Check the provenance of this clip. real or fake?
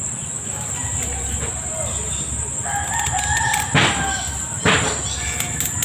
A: real